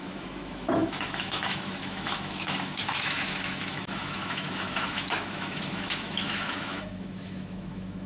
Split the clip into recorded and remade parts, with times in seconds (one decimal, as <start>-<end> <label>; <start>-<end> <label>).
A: 0.0-8.1 remade